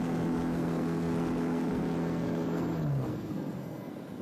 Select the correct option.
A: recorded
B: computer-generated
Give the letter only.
B